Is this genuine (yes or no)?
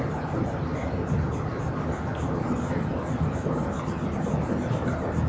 yes